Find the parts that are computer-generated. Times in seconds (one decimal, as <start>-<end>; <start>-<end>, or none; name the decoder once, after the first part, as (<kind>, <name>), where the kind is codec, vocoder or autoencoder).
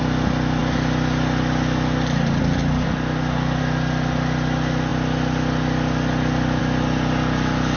none